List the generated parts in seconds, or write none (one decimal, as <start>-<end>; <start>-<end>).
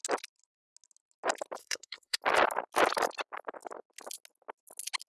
1.6-2.2